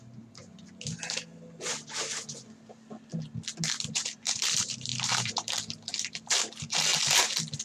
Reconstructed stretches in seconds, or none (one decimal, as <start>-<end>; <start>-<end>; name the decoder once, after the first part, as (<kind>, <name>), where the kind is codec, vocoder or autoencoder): 0.0-0.4 (vocoder, BigVGAN v2); 3.9-6.9